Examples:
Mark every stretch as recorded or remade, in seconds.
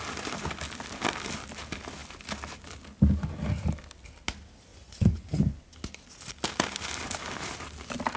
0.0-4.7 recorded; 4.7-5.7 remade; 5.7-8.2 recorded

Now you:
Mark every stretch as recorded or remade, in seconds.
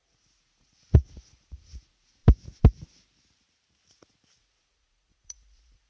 0.0-2.2 remade; 2.2-4.4 recorded; 4.4-5.9 remade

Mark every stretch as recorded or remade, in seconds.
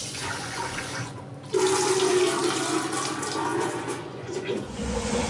0.0-1.2 remade; 1.2-3.5 recorded; 3.5-5.3 remade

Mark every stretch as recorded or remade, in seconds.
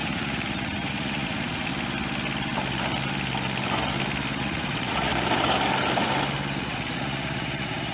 0.0-1.7 remade; 1.7-4.4 recorded; 4.4-5.1 remade; 5.1-6.6 recorded; 6.6-7.9 remade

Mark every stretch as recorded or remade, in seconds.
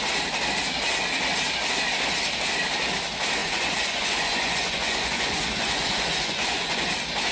0.0-3.4 recorded; 3.4-6.8 remade; 6.8-7.3 recorded